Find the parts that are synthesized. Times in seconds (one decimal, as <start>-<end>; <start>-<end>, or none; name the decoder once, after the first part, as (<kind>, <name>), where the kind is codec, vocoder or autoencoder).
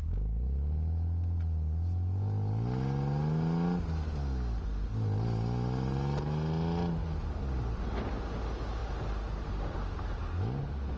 none